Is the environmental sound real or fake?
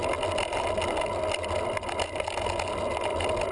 real